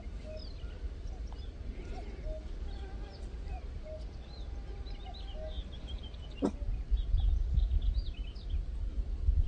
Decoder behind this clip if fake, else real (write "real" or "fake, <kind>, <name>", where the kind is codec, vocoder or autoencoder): real